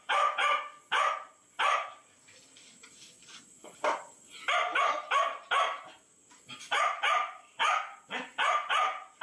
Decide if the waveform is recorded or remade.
recorded